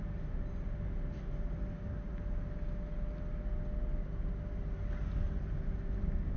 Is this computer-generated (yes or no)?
no